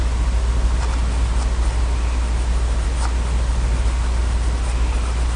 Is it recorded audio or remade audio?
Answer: recorded